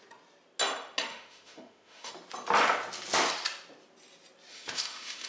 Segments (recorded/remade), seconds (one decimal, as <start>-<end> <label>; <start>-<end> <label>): 0.0-1.1 recorded; 1.1-2.1 remade; 2.1-4.5 recorded; 4.5-5.3 remade